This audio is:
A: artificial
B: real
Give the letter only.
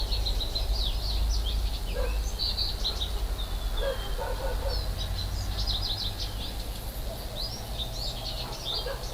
B